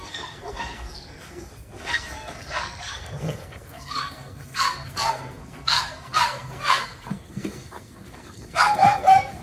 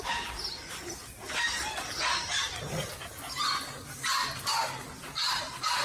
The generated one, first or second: first